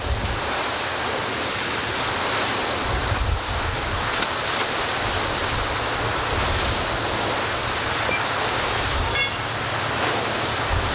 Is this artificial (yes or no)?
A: no